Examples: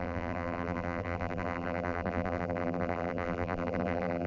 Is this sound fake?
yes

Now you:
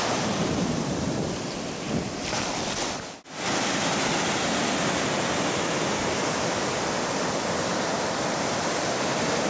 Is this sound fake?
no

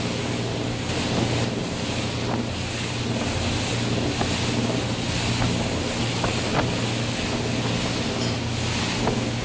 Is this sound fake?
no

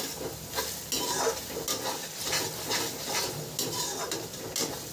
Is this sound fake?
no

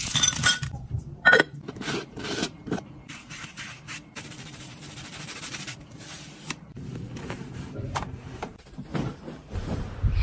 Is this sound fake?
yes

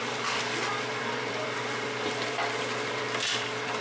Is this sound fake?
yes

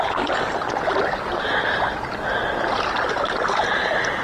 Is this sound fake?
no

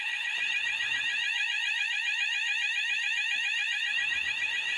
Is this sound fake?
yes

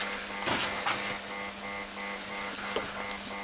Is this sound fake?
no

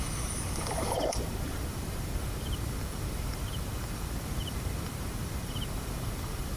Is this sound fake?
yes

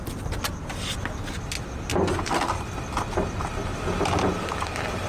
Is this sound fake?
no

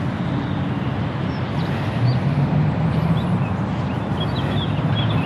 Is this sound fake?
no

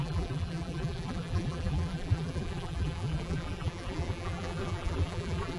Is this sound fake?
yes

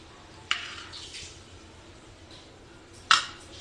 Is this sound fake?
yes